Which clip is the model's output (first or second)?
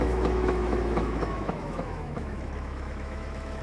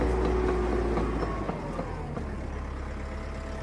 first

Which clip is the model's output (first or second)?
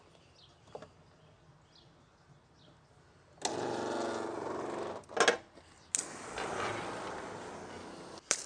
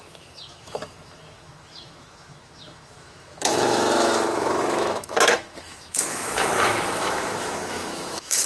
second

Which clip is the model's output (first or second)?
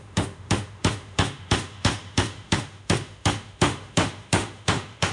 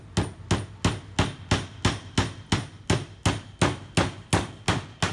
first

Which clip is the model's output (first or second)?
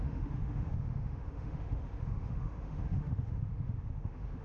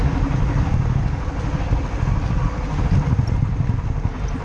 first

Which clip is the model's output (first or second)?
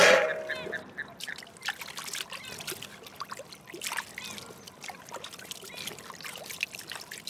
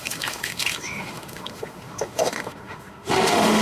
second